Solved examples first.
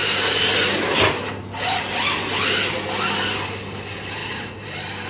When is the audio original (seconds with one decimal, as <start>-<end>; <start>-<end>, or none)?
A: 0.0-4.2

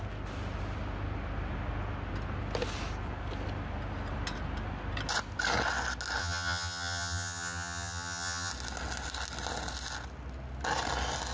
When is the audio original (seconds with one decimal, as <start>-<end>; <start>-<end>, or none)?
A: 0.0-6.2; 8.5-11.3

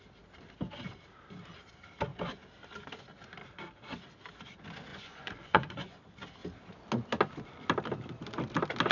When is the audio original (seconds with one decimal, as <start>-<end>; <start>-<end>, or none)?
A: 0.0-4.9; 6.0-8.9

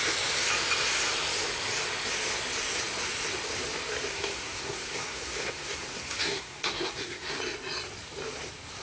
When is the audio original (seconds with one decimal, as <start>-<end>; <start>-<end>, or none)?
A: 0.0-4.1; 7.4-8.8

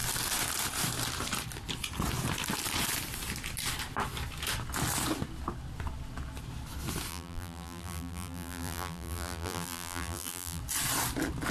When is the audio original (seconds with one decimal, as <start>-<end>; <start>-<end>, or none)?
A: 0.0-7.1; 10.6-11.5

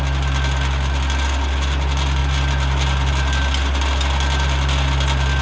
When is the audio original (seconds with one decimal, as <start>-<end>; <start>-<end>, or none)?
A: 0.0-5.4